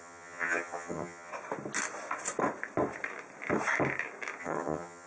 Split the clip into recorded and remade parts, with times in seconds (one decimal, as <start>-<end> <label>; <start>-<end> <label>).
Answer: 0.0-1.3 remade; 1.3-4.4 recorded; 4.4-5.1 remade